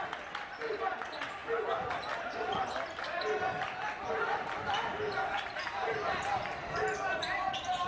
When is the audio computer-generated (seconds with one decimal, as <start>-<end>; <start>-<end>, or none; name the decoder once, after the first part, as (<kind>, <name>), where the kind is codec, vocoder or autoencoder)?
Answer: none